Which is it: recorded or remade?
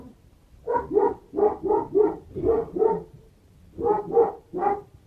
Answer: remade